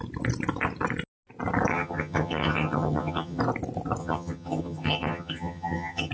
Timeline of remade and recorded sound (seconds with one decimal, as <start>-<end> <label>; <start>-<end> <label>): 0.0-1.7 recorded; 1.7-3.4 remade; 3.4-4.0 recorded; 4.0-6.1 remade